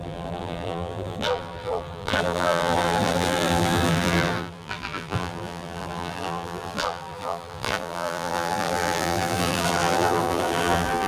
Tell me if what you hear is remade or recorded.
remade